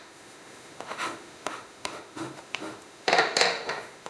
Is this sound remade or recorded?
remade